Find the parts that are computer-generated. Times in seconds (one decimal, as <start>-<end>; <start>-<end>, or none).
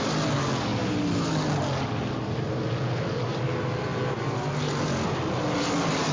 none